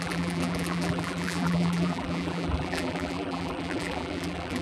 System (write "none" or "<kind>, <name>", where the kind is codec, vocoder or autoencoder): vocoder, BigVGAN v2